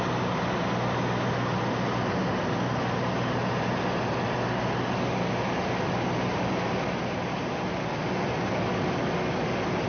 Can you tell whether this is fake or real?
real